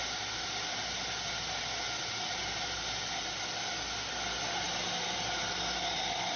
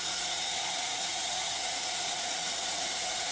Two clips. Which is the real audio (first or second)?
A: first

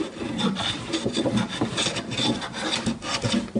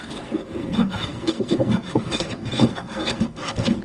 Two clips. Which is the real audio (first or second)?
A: first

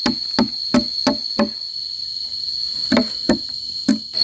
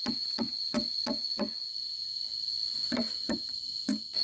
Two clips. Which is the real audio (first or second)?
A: first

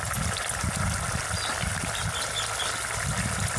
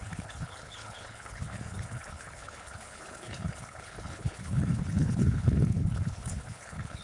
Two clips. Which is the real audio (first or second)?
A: first